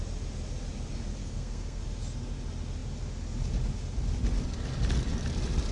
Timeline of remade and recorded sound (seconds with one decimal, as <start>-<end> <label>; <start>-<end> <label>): 0.0-1.2 recorded; 1.2-1.8 remade; 1.8-5.7 recorded